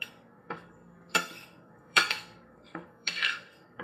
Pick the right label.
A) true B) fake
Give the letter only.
B